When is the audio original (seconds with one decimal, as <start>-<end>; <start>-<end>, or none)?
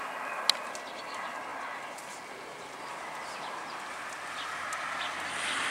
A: 0.0-5.7